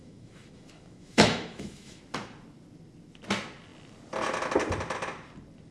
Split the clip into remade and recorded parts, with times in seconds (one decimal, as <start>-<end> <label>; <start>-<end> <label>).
0.0-2.0 remade; 2.0-5.7 recorded

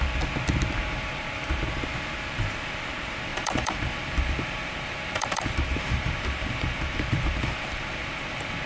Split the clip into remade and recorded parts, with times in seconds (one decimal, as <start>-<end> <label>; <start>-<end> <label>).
0.0-0.8 recorded; 0.8-1.7 remade; 1.7-3.3 recorded; 3.3-8.7 remade

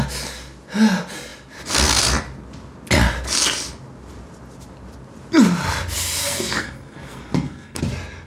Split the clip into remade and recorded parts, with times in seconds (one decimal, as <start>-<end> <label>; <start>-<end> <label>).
0.0-6.2 recorded; 6.2-7.8 remade; 7.8-8.3 recorded

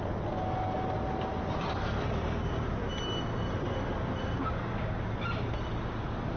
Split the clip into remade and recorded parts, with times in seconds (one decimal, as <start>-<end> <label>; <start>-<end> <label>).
0.0-4.4 recorded; 4.4-5.0 remade; 5.0-6.4 recorded

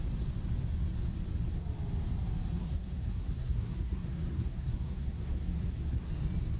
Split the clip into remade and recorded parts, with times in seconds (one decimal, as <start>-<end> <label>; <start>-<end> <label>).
0.0-2.6 recorded; 2.6-6.1 remade; 6.1-6.6 recorded

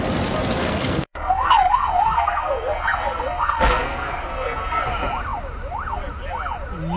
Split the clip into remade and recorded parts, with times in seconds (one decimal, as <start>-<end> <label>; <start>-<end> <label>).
0.0-0.6 recorded; 0.6-4.8 remade; 4.8-7.0 recorded

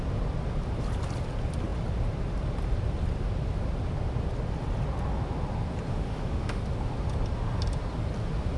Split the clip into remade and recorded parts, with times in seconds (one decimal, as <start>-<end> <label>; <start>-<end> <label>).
0.0-5.9 recorded; 5.9-6.6 remade; 6.6-8.6 recorded